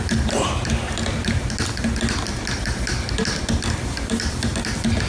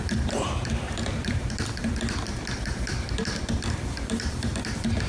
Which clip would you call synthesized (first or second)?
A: second